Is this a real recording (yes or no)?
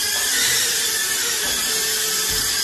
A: yes